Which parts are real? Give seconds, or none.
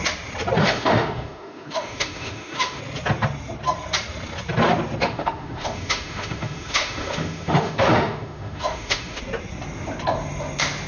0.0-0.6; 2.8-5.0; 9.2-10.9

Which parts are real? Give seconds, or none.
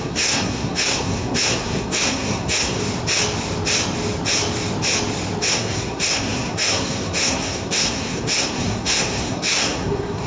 2.8-5.5